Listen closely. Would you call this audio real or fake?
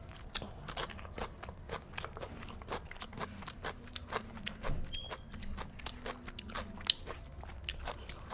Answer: real